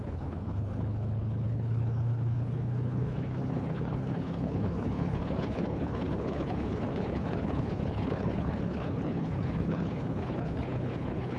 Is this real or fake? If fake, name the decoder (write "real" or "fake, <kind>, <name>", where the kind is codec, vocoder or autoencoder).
fake, codec, HILCodec